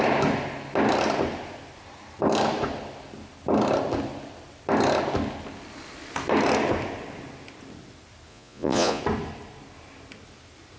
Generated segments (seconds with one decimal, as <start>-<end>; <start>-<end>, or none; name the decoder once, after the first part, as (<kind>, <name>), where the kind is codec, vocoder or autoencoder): 8.3-9.0 (vocoder, Vocos)